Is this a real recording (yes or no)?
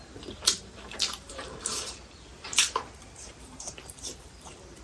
no